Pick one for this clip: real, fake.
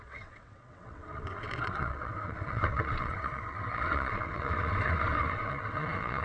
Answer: fake